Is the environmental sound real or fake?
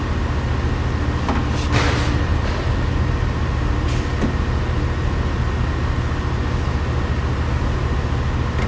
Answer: real